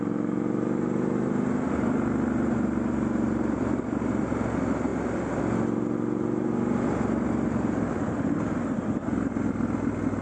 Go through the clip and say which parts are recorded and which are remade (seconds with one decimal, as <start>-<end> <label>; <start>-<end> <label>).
0.0-10.2 recorded